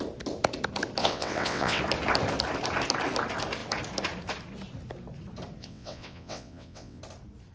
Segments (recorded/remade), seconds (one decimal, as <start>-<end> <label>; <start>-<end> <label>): 0.0-1.0 recorded; 1.0-1.8 remade; 1.8-5.6 recorded; 5.6-7.0 remade; 7.0-7.5 recorded